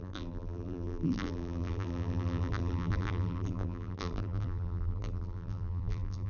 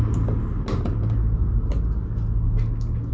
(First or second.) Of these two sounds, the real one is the second